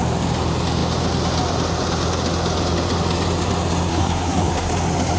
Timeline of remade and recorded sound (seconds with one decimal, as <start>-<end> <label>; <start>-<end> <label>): 0.0-3.9 recorded; 3.9-4.7 remade; 4.7-5.2 recorded